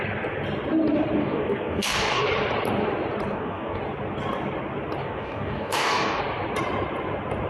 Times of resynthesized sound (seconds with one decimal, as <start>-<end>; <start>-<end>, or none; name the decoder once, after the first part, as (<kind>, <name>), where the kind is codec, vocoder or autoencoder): 1.2-2.2 (codec, DAC); 3.3-3.8; 5.0-6.2